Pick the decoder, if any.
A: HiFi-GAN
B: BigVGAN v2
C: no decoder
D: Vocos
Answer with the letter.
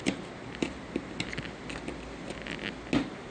C